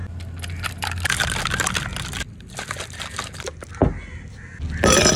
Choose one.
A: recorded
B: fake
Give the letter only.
A